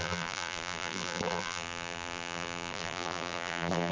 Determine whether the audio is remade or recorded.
remade